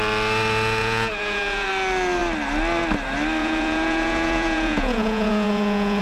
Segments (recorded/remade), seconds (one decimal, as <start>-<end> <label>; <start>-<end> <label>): 0.0-0.8 recorded; 0.8-1.7 remade; 1.7-3.4 recorded; 3.4-6.0 remade